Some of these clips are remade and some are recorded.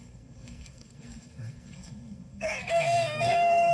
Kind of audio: remade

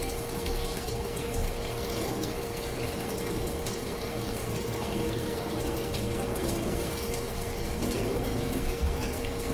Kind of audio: remade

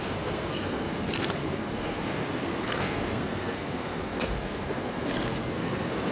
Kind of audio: remade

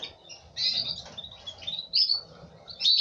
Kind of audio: recorded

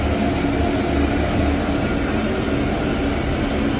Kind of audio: recorded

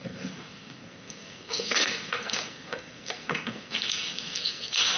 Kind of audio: remade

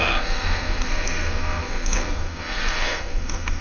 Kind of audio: remade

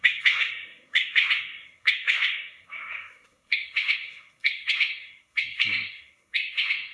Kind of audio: remade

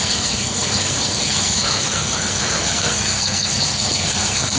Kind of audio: remade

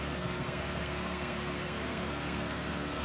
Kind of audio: remade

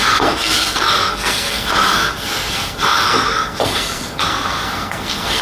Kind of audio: remade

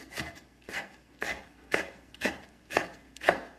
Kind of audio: remade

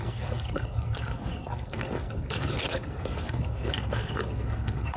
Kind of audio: remade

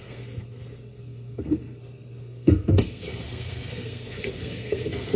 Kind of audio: remade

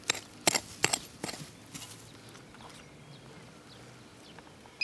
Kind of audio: recorded